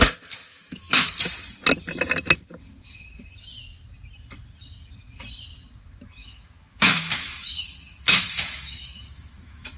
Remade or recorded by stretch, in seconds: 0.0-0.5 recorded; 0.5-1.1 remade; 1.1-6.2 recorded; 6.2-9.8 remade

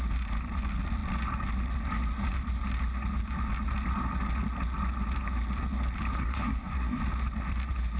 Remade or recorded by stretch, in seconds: 0.0-6.2 recorded; 6.2-7.0 remade; 7.0-8.0 recorded

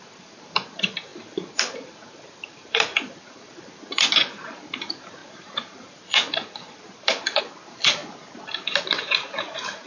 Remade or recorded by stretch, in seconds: 0.0-8.0 remade; 8.0-8.8 recorded; 8.8-9.9 remade

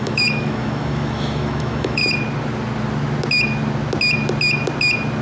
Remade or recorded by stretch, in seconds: 0.0-2.0 remade; 2.0-5.2 recorded

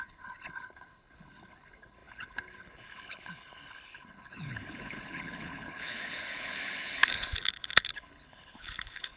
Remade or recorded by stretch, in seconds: 0.0-9.2 remade

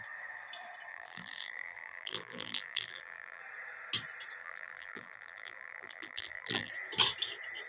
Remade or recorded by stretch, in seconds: 0.0-0.9 recorded; 0.9-3.4 remade; 3.4-4.4 recorded; 4.4-6.7 remade; 6.7-7.7 recorded